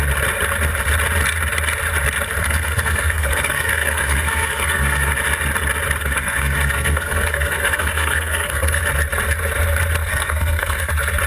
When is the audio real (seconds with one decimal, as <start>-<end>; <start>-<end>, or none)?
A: 0.0-2.4; 5.1-6.0; 8.8-10.1; 10.9-11.3